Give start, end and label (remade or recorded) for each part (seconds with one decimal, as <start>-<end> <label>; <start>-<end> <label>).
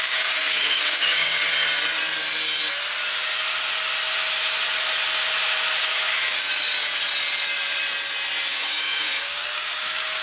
0.0-1.4 remade; 1.4-5.8 recorded; 5.8-6.5 remade; 6.5-8.5 recorded; 8.5-10.2 remade